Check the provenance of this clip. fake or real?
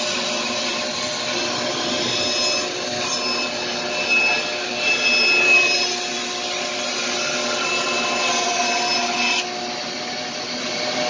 real